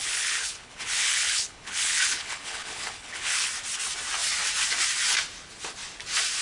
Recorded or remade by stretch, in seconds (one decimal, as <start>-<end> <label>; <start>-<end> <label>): 0.0-3.5 remade; 3.5-6.4 recorded